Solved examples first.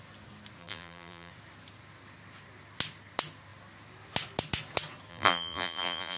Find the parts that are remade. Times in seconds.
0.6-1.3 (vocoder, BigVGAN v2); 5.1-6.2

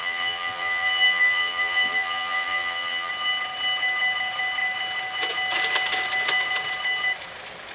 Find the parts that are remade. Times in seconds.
0.0-3.1 (vocoder, BigVGAN v2)

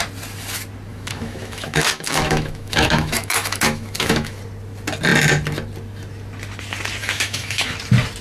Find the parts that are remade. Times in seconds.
0.9-4.4 (autoencoder, DAC-VAE); 7.0-7.7

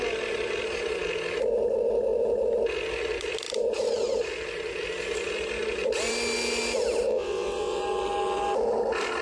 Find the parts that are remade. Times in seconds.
7.1-7.8 (vocoder, WaveNeXt)

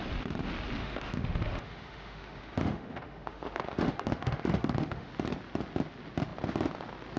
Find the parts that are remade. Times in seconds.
0.8-5.1 (autoencoder, DAC-VAE)

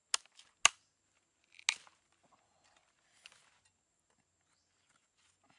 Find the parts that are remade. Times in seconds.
none